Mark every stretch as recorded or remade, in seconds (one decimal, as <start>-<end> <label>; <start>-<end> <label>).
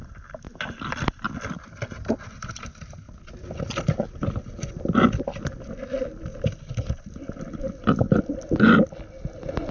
0.0-9.7 recorded